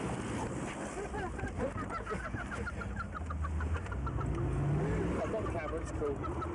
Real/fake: real